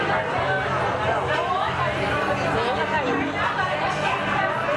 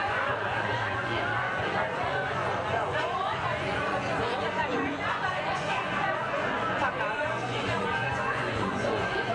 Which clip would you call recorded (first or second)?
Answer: first